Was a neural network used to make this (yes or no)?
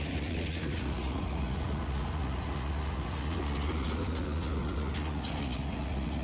yes